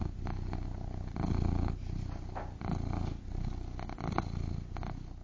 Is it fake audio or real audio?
real